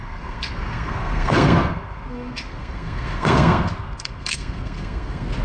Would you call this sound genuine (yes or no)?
no